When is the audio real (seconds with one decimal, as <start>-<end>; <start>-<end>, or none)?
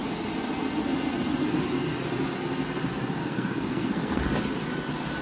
0.0-3.2; 4.2-5.2